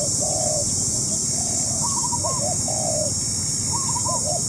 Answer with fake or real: real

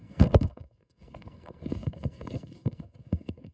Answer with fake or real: fake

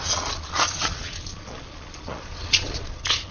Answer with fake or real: fake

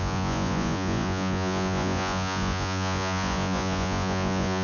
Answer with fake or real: fake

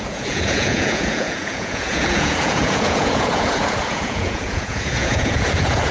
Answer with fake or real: fake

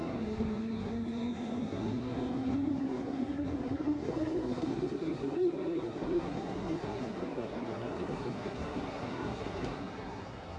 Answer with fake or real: fake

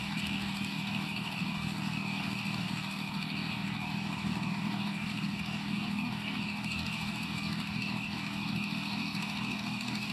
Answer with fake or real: fake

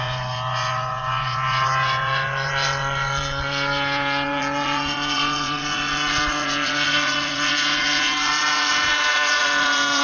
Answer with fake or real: fake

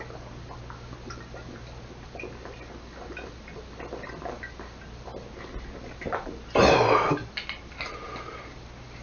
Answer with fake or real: real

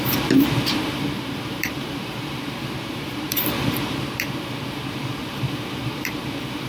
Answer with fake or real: fake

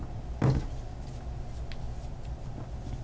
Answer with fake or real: real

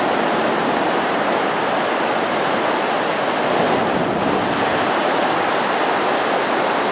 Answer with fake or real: real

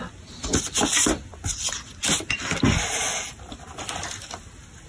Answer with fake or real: real